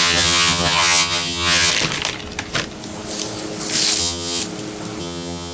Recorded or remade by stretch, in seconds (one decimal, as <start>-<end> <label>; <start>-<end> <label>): 0.0-1.7 remade; 1.7-4.0 recorded; 4.0-4.4 remade; 4.4-5.0 recorded; 5.0-5.5 remade